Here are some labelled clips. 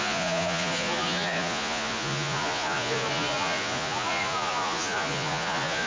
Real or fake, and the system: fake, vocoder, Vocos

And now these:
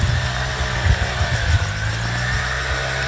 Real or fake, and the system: real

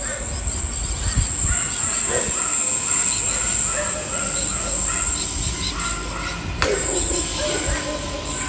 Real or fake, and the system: real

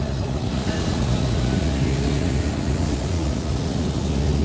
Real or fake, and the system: fake, vocoder, Vocos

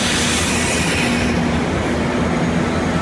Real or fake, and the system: real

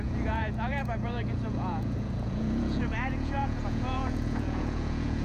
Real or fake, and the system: fake, vocoder, Vocos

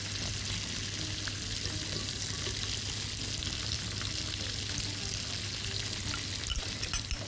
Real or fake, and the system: real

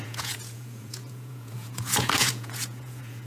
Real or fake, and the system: fake, vocoder, Vocos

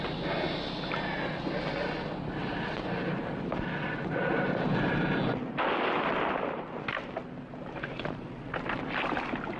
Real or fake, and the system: real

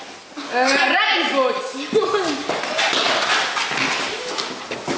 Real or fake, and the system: real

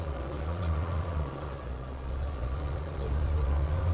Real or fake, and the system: fake, vocoder, Vocos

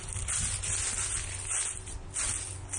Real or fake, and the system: real